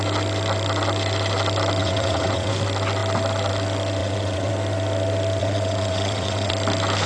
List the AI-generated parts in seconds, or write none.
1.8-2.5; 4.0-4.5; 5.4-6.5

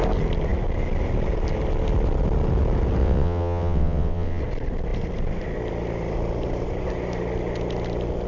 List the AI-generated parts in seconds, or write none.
3.0-4.4

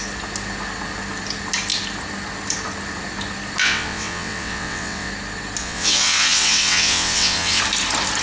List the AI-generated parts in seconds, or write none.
3.6-5.1; 5.6-7.6

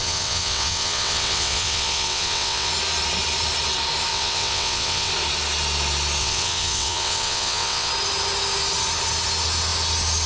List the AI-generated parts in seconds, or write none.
0.0-2.7; 4.1-5.1; 6.2-7.9

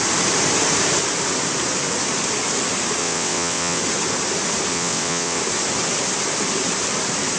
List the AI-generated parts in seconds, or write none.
3.0-3.8; 4.7-5.4